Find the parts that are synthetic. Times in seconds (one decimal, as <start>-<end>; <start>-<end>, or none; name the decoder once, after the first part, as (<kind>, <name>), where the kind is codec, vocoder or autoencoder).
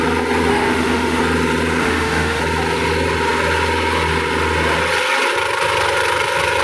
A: 0.5-1.2 (autoencoder, DAC-VAE); 1.8-2.4